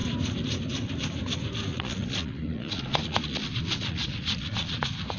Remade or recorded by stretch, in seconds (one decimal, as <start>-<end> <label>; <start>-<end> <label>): 0.0-1.7 recorded; 1.7-4.8 remade; 4.8-5.2 recorded